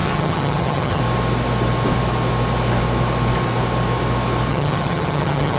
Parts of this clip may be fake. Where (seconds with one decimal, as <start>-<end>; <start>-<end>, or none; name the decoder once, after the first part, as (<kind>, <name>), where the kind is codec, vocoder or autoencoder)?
0.0-1.0 (vocoder, HiFi-GAN); 4.5-5.6